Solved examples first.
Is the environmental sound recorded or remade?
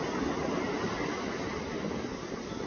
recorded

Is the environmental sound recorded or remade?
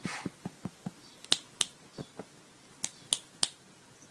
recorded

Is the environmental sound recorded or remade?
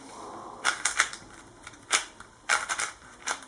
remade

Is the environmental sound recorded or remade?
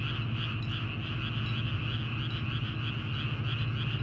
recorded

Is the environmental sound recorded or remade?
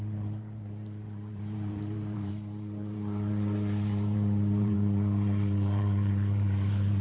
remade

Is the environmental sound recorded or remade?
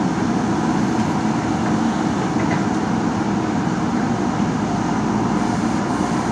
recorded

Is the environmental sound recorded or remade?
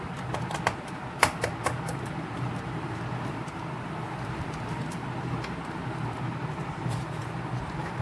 remade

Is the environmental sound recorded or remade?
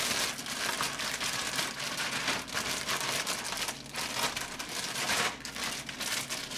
recorded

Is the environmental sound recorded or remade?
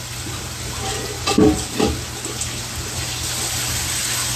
recorded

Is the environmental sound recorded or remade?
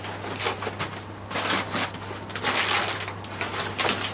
recorded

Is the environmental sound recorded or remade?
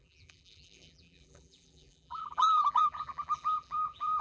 remade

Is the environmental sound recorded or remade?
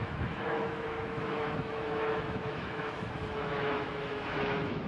remade